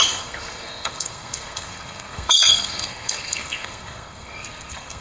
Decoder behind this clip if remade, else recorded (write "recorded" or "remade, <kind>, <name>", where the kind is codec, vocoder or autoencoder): remade, codec, SNAC